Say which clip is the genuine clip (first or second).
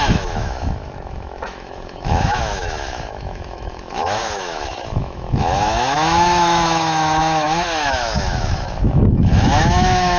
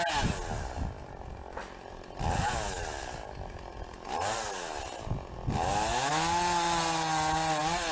second